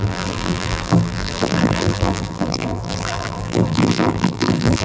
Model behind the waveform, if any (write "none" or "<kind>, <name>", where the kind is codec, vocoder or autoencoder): vocoder, BigVGAN v2